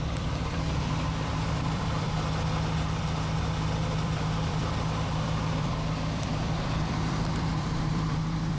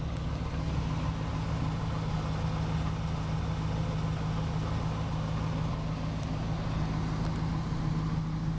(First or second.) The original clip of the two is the second